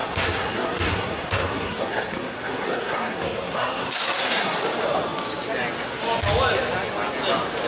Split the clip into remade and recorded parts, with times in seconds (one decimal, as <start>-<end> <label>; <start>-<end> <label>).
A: 0.0-4.6 remade; 4.6-7.7 recorded